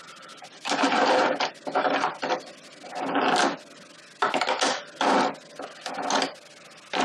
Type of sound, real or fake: real